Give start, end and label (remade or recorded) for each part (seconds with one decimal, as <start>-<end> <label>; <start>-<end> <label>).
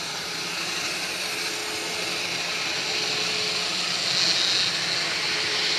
0.0-1.6 remade; 1.6-5.1 recorded; 5.1-5.8 remade